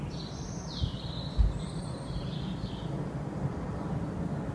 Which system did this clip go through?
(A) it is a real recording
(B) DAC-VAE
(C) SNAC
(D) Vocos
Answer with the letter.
A